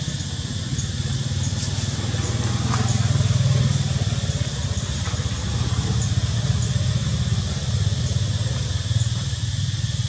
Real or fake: real